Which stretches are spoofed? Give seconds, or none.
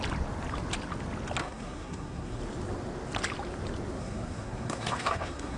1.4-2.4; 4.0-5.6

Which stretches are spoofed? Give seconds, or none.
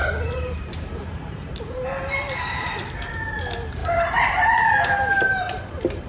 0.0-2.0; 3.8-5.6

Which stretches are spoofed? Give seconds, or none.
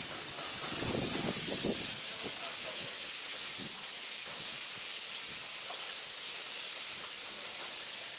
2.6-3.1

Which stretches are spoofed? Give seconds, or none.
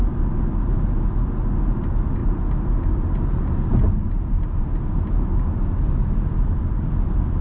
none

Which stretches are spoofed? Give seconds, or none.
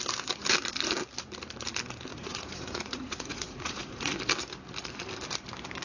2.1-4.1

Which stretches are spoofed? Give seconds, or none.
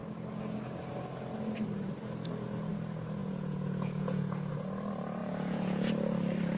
3.2-4.5; 5.2-5.9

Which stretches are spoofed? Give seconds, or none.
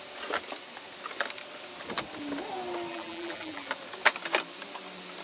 2.9-3.7